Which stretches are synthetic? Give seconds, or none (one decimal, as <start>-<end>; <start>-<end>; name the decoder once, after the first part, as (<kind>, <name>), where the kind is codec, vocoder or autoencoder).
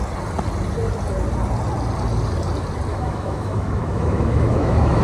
2.9-5.0 (autoencoder, DAC-VAE)